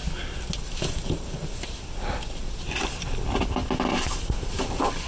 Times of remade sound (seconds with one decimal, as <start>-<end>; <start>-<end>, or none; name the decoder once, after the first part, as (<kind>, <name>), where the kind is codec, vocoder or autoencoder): none